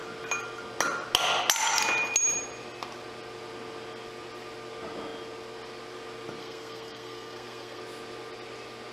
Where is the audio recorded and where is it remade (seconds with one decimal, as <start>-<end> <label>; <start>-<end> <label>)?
0.0-6.4 recorded; 6.4-7.8 remade; 7.8-8.9 recorded